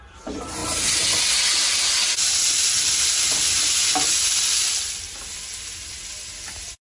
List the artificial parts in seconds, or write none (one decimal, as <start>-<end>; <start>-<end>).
none

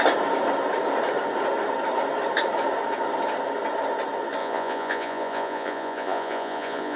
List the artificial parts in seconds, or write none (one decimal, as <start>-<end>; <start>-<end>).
4.4-7.0

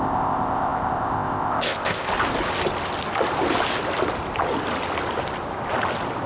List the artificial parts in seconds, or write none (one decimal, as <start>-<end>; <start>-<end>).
0.0-2.1

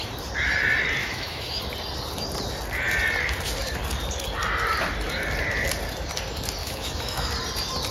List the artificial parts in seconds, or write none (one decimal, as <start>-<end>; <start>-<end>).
1.0-1.6; 6.6-7.3

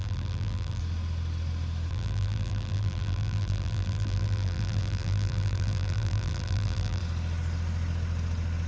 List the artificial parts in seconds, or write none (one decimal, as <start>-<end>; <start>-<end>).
0.0-0.8; 1.9-7.0